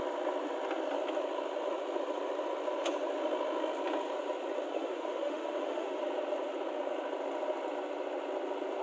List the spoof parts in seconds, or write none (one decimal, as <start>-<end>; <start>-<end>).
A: 4.7-6.0